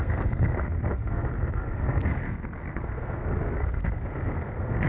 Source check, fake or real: fake